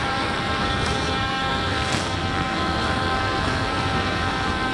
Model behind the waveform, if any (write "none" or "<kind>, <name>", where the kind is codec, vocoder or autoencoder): codec, SNAC